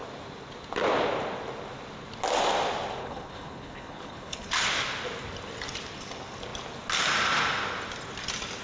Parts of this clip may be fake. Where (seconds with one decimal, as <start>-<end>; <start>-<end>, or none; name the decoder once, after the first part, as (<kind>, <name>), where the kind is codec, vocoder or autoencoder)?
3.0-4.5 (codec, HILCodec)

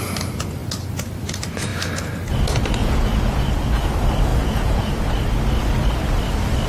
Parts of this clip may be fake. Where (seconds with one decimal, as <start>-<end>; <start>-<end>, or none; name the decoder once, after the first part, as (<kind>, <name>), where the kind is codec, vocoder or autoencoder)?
2.8-3.9 (vocoder, Vocos); 4.3-4.9

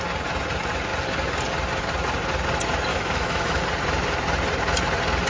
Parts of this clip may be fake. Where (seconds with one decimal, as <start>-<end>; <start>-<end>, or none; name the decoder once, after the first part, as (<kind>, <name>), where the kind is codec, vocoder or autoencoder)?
2.9-3.6 (autoencoder, DAC-VAE)

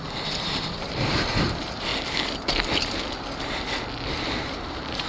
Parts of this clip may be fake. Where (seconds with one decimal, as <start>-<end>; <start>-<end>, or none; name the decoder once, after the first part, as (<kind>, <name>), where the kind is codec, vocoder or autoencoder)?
0.0-1.9 (vocoder, BigVGAN v2); 4.4-5.1